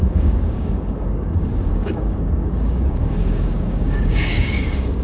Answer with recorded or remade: remade